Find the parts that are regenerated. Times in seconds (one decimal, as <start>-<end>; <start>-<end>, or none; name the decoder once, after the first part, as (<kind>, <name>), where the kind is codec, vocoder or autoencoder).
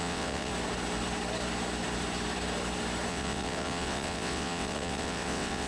0.0-0.5 (vocoder, WaveNeXt); 3.1-5.7